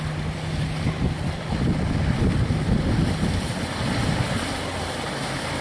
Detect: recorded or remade recorded